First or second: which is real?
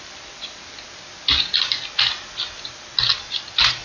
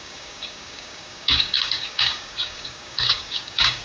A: first